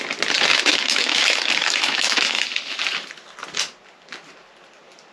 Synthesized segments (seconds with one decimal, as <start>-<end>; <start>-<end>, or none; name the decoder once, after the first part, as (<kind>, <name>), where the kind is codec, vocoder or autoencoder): 0.5-2.4 (autoencoder, DAC-VAE)